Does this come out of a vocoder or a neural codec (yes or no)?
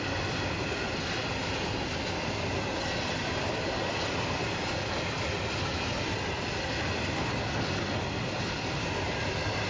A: no